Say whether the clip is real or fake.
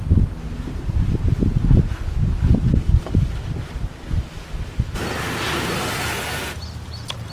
real